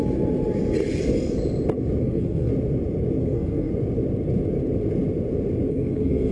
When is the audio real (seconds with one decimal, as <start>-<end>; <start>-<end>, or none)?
0.0-2.0; 2.5-3.2; 3.7-5.7